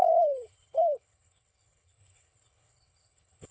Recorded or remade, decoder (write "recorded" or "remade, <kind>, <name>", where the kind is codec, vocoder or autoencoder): remade, codec, HILCodec